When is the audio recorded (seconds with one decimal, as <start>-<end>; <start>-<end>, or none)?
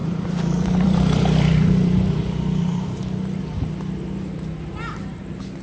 3.4-5.6